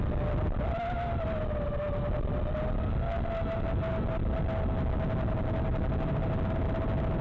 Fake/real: real